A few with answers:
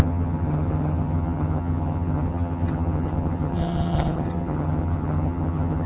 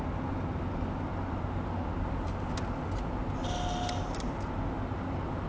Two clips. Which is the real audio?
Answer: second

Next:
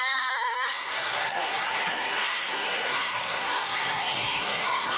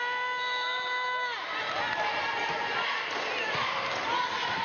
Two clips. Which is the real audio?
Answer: second